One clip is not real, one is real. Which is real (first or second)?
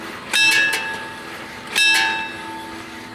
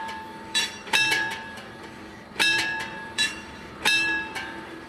first